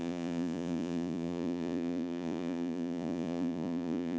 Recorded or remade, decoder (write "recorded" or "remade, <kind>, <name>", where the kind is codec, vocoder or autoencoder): remade, vocoder, Vocos